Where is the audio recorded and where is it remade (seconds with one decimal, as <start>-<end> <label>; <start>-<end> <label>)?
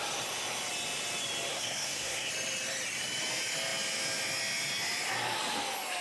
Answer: 0.0-1.5 recorded; 1.5-2.3 remade; 2.3-6.0 recorded